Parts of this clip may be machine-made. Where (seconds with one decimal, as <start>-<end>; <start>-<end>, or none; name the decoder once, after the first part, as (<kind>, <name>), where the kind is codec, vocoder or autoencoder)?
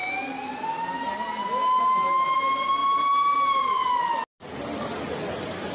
none